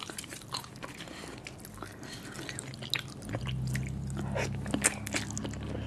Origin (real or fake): real